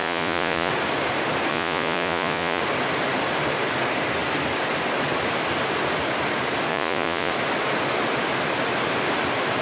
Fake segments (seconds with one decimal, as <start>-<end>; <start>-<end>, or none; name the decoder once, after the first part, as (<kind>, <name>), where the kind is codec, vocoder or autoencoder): 0.0-0.7 (vocoder, Vocos); 1.5-2.6; 6.7-7.3